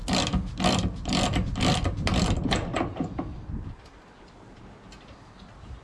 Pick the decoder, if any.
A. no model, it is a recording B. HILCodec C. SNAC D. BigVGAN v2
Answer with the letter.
A